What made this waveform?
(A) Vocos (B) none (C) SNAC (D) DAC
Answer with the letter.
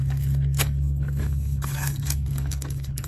C